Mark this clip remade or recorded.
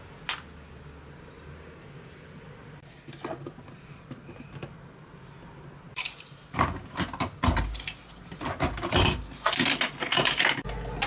recorded